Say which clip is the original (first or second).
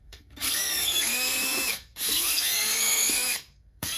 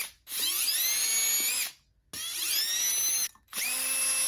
second